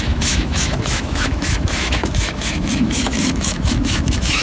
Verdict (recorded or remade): remade